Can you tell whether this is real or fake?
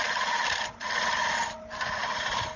real